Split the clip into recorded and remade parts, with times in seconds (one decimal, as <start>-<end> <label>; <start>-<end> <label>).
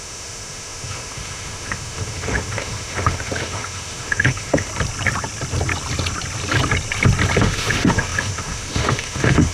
0.0-4.7 remade; 4.7-7.4 recorded; 7.4-9.5 remade